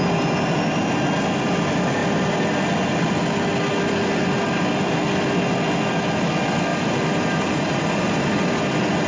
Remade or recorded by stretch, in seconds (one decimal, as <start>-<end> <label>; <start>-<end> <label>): 0.0-6.7 recorded; 6.7-8.4 remade; 8.4-9.1 recorded

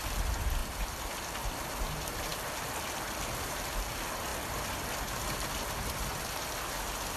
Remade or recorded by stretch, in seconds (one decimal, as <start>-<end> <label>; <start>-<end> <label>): 0.0-0.6 recorded; 0.6-1.5 remade; 1.5-2.3 recorded; 2.3-3.3 remade; 3.3-4.3 recorded; 4.3-5.0 remade; 5.0-7.2 recorded

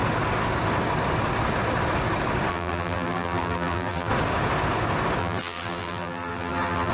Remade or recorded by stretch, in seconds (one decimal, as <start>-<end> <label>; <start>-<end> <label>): 0.0-2.5 recorded; 2.5-4.1 remade; 4.1-5.2 recorded; 5.2-6.9 remade

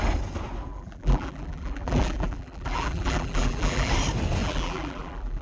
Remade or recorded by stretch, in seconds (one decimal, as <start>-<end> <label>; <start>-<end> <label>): 0.0-0.7 recorded; 0.7-3.9 remade; 3.9-4.4 recorded; 4.4-5.4 remade

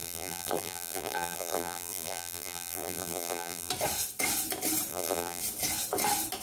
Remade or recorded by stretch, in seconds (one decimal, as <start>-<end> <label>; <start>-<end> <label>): 0.0-3.7 remade; 3.7-4.9 recorded; 4.9-5.4 remade; 5.4-6.4 recorded

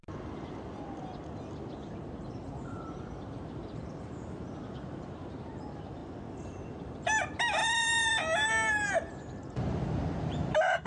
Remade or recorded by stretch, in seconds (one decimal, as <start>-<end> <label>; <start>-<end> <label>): 0.0-1.9 recorded; 1.9-6.0 remade; 6.0-6.6 recorded; 6.6-7.6 remade; 7.6-9.1 recorded; 9.1-10.9 remade

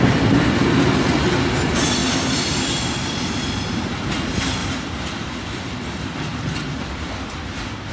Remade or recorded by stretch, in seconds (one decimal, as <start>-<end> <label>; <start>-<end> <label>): 0.0-0.6 recorded; 0.6-1.2 remade; 1.2-2.0 recorded; 2.0-3.9 remade; 3.9-4.6 recorded; 4.6-7.1 remade; 7.1-7.9 recorded

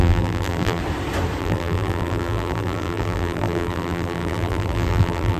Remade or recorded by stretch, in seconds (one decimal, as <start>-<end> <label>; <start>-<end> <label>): 0.0-0.8 remade; 0.8-1.4 recorded; 1.4-5.4 remade